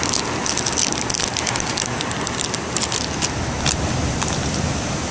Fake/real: real